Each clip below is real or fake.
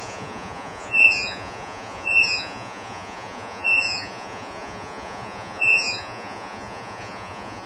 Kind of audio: fake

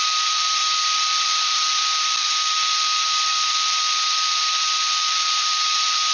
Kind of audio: fake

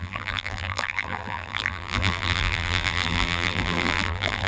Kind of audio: fake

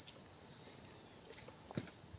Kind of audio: real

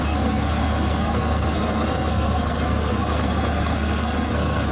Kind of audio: fake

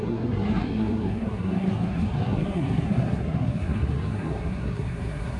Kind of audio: fake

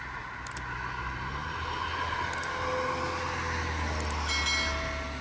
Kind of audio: real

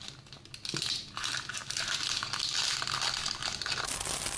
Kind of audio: real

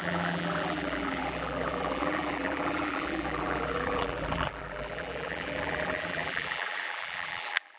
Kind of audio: fake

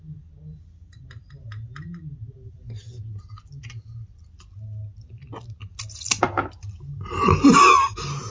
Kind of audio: real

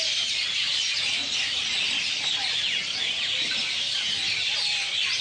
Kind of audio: real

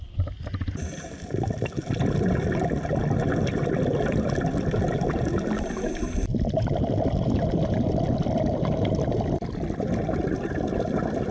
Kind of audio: real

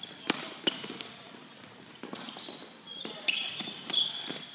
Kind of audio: real